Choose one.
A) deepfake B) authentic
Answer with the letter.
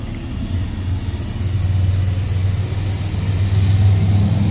B